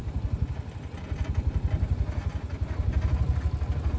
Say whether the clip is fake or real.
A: real